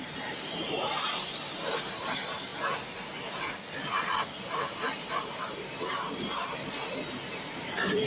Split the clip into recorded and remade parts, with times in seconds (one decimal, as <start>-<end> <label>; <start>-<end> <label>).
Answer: 0.0-2.5 remade; 2.5-4.4 recorded; 4.4-6.8 remade; 6.8-7.3 recorded; 7.3-8.1 remade